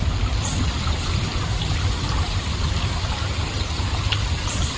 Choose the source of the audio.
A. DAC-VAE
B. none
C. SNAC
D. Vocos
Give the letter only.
B